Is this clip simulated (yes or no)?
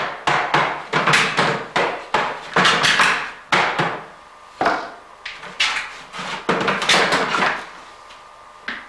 no